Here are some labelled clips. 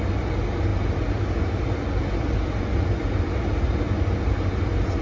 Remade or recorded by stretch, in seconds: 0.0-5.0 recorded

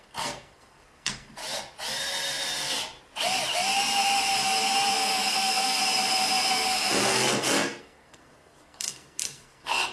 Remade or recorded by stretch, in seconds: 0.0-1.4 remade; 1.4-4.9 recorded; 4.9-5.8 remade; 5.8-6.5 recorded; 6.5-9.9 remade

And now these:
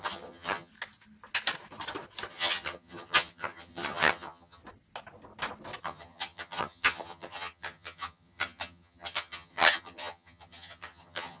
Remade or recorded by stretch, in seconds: 0.0-0.7 remade; 0.7-2.3 recorded; 2.3-4.6 remade; 4.6-5.8 recorded; 5.8-11.4 remade

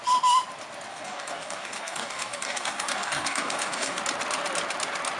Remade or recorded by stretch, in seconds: 0.0-0.9 recorded; 0.9-4.0 remade; 4.0-5.2 recorded

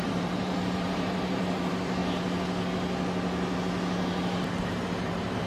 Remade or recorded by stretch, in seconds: 0.0-2.0 remade; 2.0-4.6 recorded; 4.6-5.5 remade

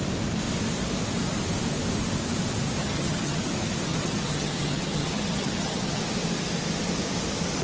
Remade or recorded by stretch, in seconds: 0.0-2.8 recorded; 2.8-3.4 remade; 3.4-3.9 recorded; 3.9-6.0 remade; 6.0-7.6 recorded